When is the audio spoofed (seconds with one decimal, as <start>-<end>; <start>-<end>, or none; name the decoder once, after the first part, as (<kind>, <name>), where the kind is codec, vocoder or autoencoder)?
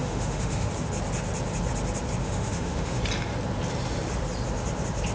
0.0-0.7 (autoencoder, DAC-VAE); 2.2-3.0